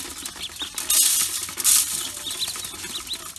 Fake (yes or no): no